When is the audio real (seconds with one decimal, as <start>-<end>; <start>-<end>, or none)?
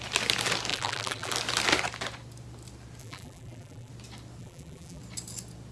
0.0-0.7; 1.3-3.0; 3.9-4.4; 5.0-5.7